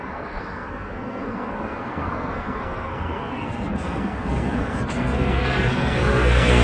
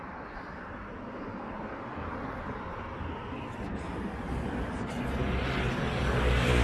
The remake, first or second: first